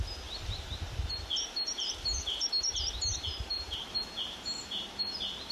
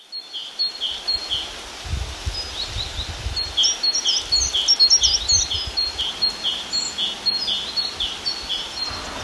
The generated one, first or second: first